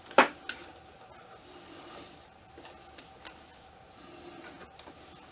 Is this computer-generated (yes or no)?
no